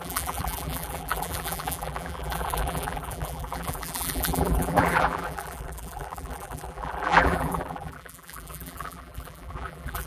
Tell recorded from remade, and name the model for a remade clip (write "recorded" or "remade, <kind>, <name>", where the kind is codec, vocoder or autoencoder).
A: remade, vocoder, BigVGAN v2